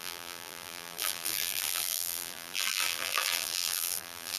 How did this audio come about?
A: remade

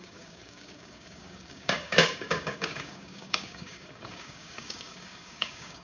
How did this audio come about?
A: remade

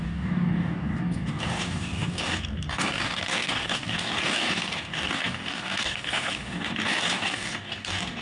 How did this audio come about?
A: remade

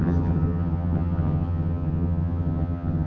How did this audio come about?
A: remade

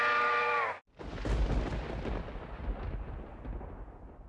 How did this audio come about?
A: recorded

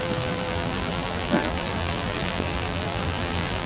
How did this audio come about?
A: remade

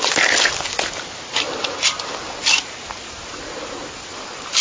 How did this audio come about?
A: recorded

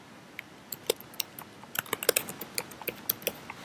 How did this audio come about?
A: recorded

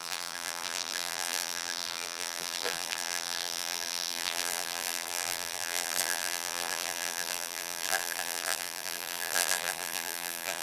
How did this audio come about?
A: remade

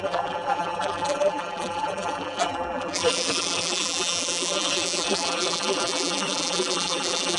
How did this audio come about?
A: remade